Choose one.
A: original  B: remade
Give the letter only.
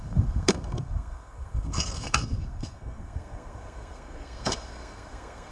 B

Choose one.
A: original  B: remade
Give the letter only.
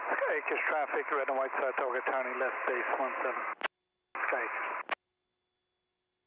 A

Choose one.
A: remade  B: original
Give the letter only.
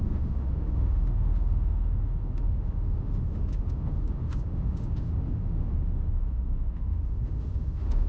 A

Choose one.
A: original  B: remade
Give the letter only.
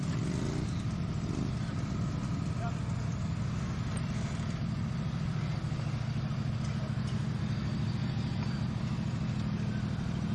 A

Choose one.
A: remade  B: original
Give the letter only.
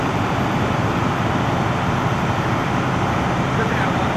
B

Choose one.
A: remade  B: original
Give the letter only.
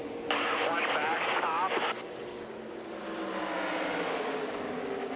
B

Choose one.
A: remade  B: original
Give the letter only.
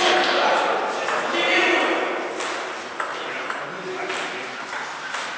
B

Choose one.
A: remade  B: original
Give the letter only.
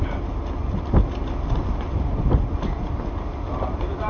B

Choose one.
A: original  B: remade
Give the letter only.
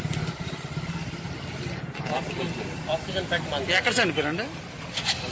A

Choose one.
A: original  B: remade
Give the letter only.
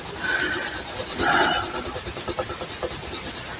A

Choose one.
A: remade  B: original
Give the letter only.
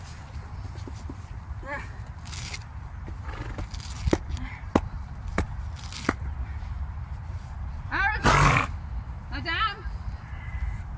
B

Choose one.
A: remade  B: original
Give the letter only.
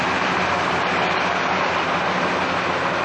B